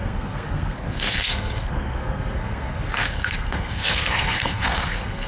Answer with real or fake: fake